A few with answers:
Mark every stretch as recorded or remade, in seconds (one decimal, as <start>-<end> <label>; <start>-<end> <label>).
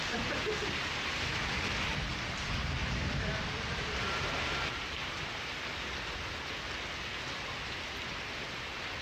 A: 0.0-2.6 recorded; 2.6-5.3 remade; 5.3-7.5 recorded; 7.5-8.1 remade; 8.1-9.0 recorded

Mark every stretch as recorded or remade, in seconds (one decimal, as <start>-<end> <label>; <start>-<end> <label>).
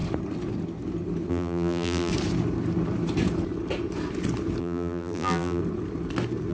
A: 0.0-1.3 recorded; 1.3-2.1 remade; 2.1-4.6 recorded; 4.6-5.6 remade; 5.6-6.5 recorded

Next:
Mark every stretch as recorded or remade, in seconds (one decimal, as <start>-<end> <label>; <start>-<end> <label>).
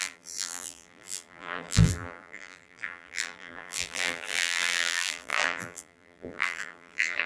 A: 0.0-7.3 remade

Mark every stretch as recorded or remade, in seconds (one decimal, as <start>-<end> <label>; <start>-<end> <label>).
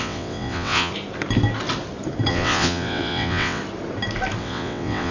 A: 0.0-0.9 remade; 0.9-2.3 recorded; 2.3-3.6 remade; 3.6-4.4 recorded; 4.4-5.1 remade